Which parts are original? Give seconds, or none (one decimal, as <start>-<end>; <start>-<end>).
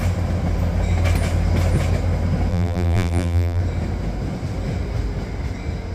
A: 0.0-2.5; 3.6-5.9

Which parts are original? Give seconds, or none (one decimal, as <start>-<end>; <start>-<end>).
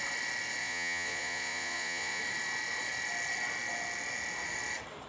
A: 0.0-0.6; 2.2-5.1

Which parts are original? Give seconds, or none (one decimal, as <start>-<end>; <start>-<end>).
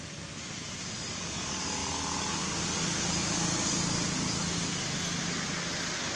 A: 0.0-6.2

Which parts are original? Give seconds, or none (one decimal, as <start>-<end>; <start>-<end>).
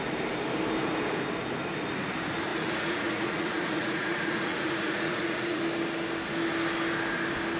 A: 0.0-2.5; 5.6-7.6